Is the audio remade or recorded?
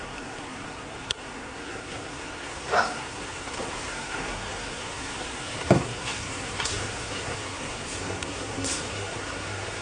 remade